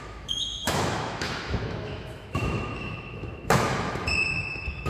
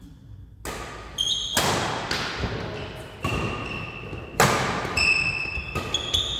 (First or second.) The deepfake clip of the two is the first